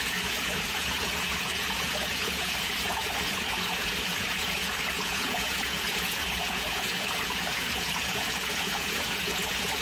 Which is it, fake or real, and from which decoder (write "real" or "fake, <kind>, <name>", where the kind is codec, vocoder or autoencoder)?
fake, vocoder, Vocos